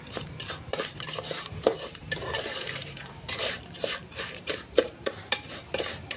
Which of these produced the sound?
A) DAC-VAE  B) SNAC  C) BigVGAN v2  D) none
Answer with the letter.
C